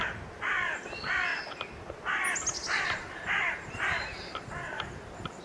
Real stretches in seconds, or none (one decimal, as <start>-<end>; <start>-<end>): 0.0-2.6